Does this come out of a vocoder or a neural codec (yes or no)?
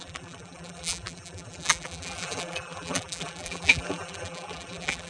yes